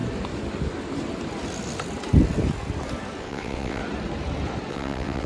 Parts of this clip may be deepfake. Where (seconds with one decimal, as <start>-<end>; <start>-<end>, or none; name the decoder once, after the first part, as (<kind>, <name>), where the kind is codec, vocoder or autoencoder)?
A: 3.2-3.8 (vocoder, WaveNeXt); 4.7-5.3